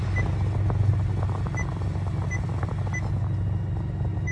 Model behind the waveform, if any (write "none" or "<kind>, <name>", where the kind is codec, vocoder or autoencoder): none